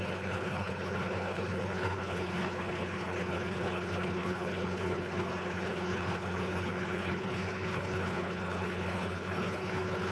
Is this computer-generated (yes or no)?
yes